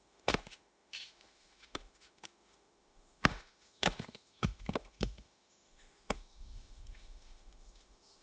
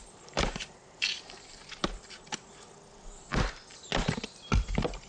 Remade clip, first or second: first